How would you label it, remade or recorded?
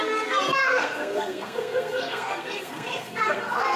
remade